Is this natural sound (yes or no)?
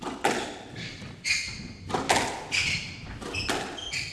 yes